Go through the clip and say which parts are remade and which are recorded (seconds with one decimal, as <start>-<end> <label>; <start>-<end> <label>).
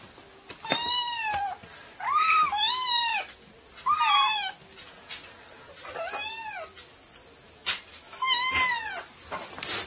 0.0-7.9 recorded; 7.9-8.7 remade; 8.7-9.9 recorded